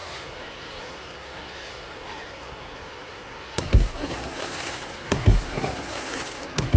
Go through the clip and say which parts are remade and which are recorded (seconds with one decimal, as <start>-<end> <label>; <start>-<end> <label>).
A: 0.0-6.8 remade